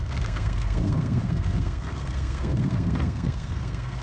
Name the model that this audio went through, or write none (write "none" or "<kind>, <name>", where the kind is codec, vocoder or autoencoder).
codec, SNAC